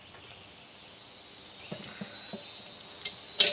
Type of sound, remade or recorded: recorded